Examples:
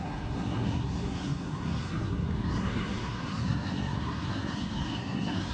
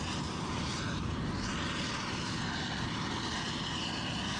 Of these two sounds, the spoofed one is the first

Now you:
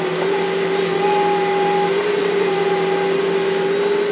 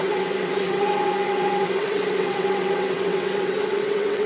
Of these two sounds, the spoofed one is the second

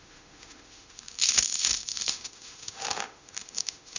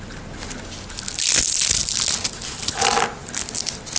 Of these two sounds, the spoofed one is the first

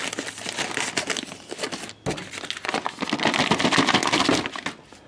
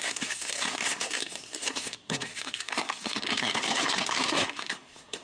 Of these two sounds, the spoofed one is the second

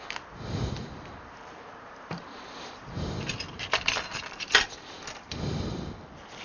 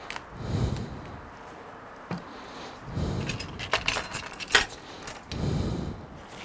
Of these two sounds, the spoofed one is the first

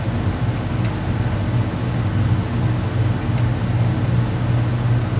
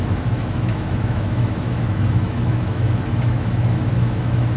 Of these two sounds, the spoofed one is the second